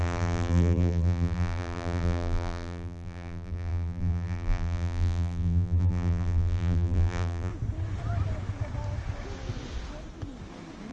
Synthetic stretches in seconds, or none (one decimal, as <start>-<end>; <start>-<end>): 0.0-7.5